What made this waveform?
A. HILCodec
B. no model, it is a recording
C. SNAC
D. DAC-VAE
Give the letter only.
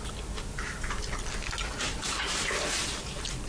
B